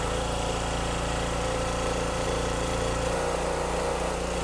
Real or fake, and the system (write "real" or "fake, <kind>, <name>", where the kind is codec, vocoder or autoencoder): fake, vocoder, BigVGAN v2